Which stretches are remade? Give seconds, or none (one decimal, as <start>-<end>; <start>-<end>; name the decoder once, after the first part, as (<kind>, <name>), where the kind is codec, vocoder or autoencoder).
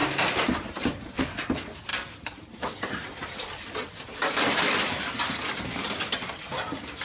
0.0-1.2 (vocoder, BigVGAN v2); 1.9-6.0